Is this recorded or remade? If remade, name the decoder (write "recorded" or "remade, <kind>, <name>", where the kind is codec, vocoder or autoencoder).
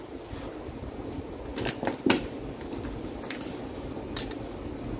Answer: recorded